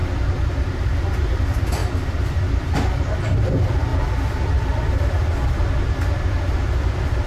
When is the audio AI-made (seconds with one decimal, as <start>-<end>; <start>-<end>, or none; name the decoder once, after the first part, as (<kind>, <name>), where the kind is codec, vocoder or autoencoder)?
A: 0.0-7.3 (vocoder, BigVGAN v2)